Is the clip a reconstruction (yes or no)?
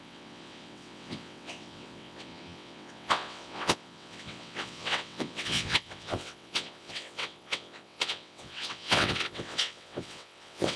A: yes